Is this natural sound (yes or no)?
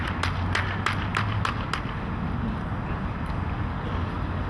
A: yes